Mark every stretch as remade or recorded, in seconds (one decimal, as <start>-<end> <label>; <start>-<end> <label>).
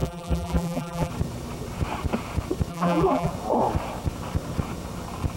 0.0-1.1 remade; 1.1-2.7 recorded; 2.7-3.3 remade; 3.3-5.4 recorded